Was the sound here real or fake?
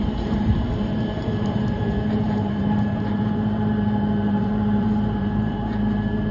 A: fake